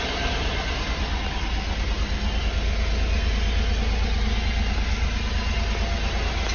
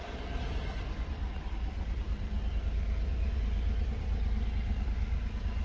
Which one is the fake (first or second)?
second